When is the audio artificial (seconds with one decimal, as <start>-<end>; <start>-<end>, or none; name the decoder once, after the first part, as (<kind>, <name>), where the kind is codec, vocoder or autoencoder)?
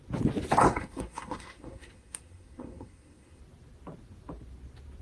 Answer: 0.7-3.4 (codec, SNAC)